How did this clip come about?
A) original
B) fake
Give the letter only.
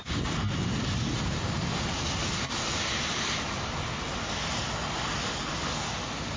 A